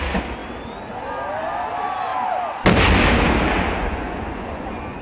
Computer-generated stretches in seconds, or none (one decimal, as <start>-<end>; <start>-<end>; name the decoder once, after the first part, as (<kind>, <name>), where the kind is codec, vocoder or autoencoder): 3.8-5.0 (vocoder, Vocos)